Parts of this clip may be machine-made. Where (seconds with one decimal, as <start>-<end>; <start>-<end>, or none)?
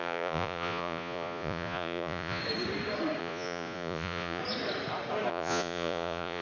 0.0-2.4; 3.2-4.4; 5.3-6.4